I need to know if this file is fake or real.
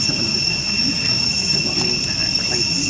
real